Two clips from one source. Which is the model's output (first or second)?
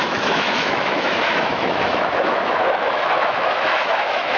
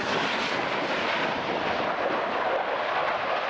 first